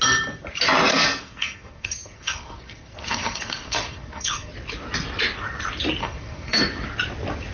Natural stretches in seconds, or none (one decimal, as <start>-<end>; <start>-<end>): 0.0-0.9; 4.5-6.0; 6.6-7.5